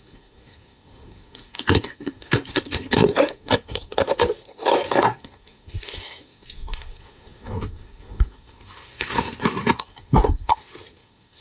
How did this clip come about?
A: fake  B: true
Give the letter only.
A